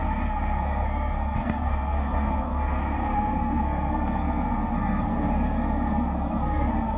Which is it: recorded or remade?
remade